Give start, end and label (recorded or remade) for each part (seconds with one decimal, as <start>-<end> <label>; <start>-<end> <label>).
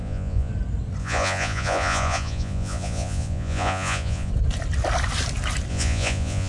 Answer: 0.0-0.5 remade; 0.5-1.0 recorded; 1.0-4.3 remade; 4.3-5.7 recorded; 5.7-6.5 remade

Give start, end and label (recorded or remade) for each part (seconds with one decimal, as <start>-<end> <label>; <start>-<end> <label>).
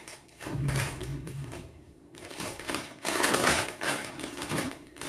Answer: 0.0-5.1 remade